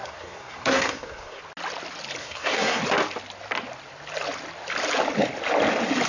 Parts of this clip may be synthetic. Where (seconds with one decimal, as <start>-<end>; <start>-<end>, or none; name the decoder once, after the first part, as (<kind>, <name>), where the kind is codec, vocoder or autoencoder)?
0.0-1.4 (codec, SNAC); 2.2-2.8

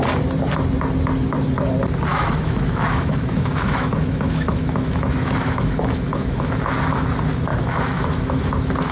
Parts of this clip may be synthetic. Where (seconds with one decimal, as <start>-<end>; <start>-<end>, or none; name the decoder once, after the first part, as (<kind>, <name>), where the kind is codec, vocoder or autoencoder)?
2.1-6.6 (autoencoder, DAC-VAE); 7.5-8.4

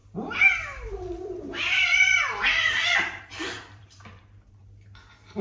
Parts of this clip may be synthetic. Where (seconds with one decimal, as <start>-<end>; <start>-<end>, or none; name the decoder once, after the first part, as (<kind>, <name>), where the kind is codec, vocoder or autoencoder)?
0.0-4.6 (vocoder, BigVGAN v2)

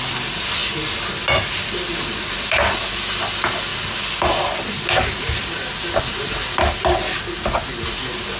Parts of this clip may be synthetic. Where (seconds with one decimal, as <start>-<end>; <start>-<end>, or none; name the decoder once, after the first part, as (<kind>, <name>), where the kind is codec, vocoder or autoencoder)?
none

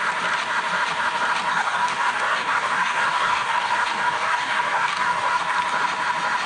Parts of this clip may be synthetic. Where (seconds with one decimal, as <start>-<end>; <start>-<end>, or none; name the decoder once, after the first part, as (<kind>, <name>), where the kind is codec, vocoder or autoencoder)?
1.5-5.4 (codec, DAC)

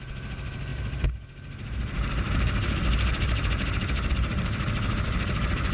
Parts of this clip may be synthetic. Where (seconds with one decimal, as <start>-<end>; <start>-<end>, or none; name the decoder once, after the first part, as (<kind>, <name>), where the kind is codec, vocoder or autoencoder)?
none

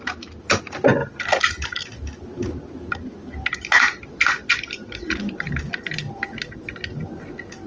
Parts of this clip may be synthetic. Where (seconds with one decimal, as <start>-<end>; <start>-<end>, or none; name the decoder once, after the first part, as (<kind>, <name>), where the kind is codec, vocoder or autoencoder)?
none